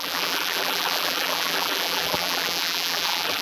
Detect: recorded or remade remade